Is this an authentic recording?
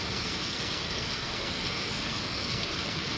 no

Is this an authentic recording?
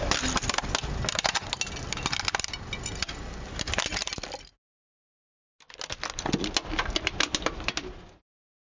yes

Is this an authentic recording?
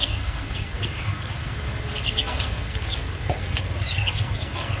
no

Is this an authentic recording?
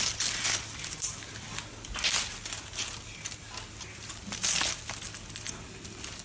yes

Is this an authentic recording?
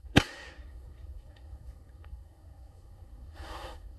no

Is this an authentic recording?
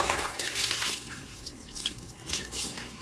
no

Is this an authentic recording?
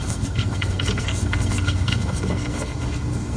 no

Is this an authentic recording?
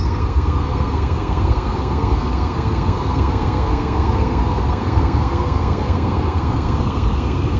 no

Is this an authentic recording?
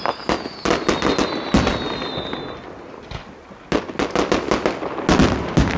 yes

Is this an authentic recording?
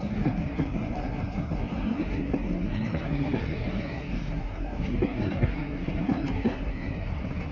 no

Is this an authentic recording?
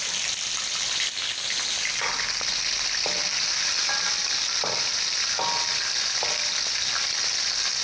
yes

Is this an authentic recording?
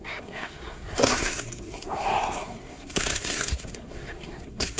no